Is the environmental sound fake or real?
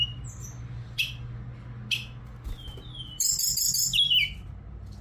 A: real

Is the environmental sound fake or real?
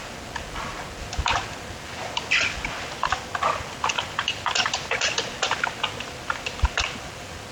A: real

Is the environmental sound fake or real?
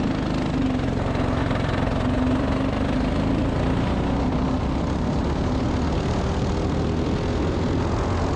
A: real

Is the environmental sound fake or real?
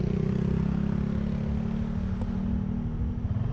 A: real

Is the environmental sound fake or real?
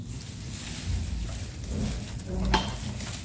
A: fake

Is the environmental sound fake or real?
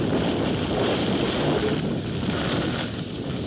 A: real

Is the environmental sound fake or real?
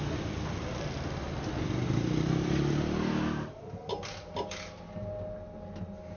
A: real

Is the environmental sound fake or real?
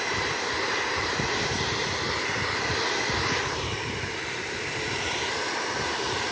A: fake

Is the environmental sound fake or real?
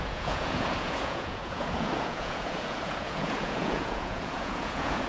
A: fake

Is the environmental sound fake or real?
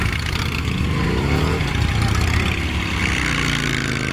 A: real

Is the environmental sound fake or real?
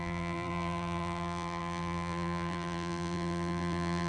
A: fake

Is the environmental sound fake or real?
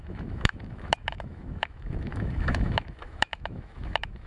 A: fake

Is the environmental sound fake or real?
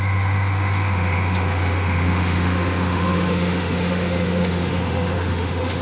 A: fake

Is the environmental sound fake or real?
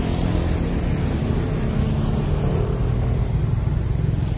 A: real